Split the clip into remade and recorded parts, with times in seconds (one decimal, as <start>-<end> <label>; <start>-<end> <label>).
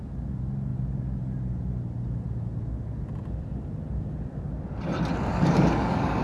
0.0-5.3 recorded; 5.3-6.2 remade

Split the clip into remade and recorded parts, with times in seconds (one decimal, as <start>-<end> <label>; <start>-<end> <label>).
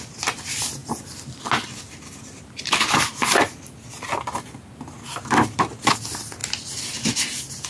0.0-7.7 recorded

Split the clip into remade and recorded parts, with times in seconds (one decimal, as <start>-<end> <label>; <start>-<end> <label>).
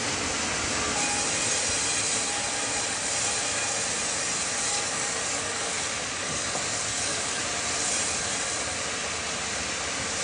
0.0-4.7 recorded; 4.7-7.4 remade; 7.4-10.2 recorded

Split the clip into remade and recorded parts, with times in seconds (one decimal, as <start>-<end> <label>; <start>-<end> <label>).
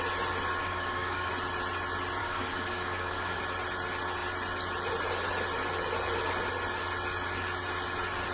0.0-0.6 recorded; 0.6-1.3 remade; 1.3-2.2 recorded; 2.2-3.4 remade; 3.4-8.3 recorded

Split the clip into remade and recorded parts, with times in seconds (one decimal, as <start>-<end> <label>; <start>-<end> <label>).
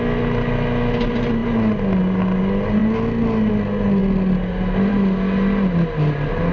0.0-6.5 recorded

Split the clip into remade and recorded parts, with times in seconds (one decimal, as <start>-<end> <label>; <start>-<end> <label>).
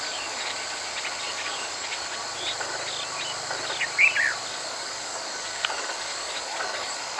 0.0-0.5 remade; 0.5-1.2 recorded; 1.2-2.2 remade; 2.2-4.5 recorded; 4.5-7.2 remade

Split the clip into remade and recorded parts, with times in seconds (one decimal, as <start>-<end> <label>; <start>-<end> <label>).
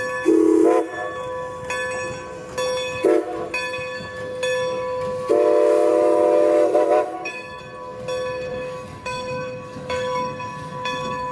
0.0-5.9 recorded; 5.9-7.6 remade; 7.6-8.5 recorded; 8.5-11.3 remade